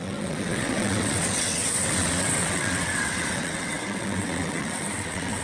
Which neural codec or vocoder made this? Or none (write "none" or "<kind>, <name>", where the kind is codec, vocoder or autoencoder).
vocoder, WaveNeXt